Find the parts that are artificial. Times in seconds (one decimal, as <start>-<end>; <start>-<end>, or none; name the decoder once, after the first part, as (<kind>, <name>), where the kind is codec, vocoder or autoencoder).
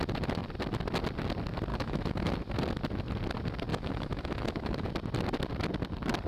1.7-2.3 (autoencoder, DAC-VAE); 3.7-4.9